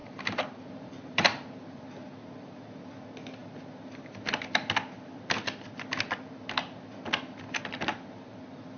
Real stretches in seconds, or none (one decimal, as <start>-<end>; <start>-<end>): 1.8-8.8